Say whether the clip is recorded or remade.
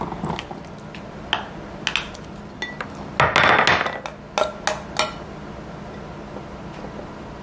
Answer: recorded